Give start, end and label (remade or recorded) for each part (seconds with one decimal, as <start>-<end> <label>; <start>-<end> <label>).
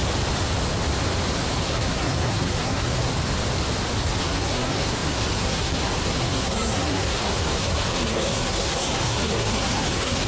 0.0-1.6 recorded; 1.6-3.1 remade; 3.1-4.2 recorded; 4.2-10.3 remade